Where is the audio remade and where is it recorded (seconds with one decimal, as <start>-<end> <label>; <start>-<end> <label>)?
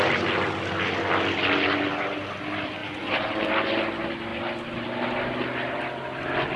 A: 0.0-2.8 recorded; 2.8-3.5 remade; 3.5-6.6 recorded